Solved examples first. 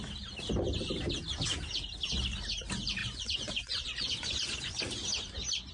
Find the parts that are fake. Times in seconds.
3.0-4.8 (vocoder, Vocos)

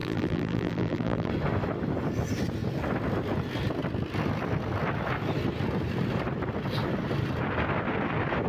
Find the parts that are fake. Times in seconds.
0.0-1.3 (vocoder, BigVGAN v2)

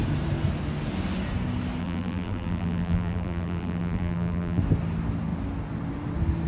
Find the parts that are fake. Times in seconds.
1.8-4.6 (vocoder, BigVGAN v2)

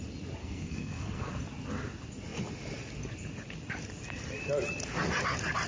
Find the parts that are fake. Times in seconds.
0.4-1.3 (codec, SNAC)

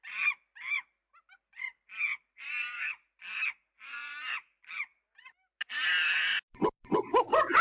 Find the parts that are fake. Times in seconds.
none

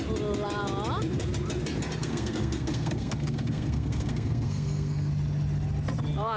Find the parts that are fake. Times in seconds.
2.0-5.1 (codec, SNAC)

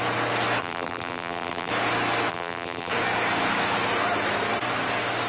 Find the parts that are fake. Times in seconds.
0.6-1.7 (vocoder, BigVGAN v2); 2.3-2.9